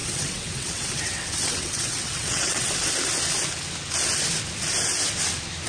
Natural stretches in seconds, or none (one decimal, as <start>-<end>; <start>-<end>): 2.7-5.7